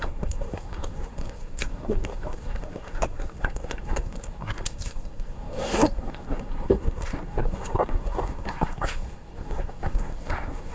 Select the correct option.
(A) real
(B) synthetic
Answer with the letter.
B